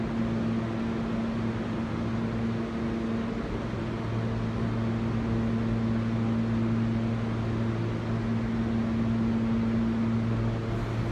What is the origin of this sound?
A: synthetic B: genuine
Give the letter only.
B